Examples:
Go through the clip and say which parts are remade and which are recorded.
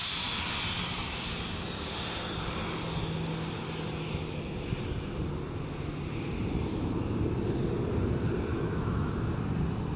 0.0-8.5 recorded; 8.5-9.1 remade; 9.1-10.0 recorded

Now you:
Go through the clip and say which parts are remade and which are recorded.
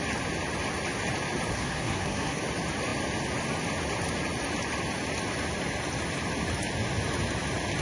0.0-1.5 recorded; 1.5-2.4 remade; 2.4-7.8 recorded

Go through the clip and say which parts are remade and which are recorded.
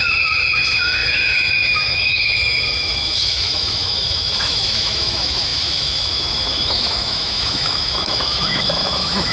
0.0-9.3 remade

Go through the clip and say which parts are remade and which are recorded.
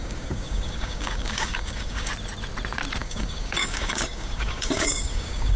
0.0-2.1 remade; 2.1-3.0 recorded; 3.0-5.6 remade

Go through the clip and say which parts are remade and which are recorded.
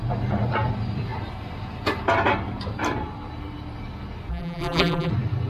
0.0-4.3 recorded; 4.3-5.1 remade; 5.1-5.5 recorded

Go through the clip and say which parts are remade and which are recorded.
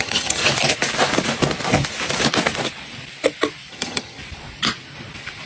0.0-0.4 remade; 0.4-3.7 recorded; 3.7-4.2 remade; 4.2-5.5 recorded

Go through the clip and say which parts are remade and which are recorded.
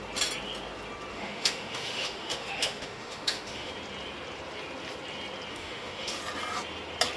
0.0-1.1 recorded; 1.1-3.7 remade; 3.7-5.5 recorded; 5.5-6.2 remade; 6.2-7.2 recorded